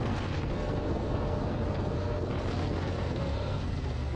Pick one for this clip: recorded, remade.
remade